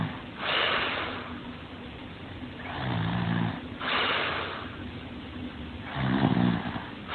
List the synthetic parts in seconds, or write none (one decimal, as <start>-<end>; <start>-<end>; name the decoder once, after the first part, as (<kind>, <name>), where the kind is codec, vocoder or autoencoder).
none